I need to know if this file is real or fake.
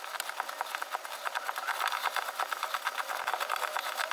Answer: real